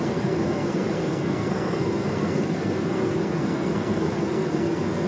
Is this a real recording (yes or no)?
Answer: no